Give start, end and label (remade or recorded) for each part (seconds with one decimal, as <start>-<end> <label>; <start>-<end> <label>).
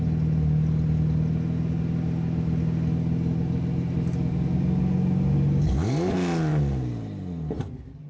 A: 0.0-8.1 recorded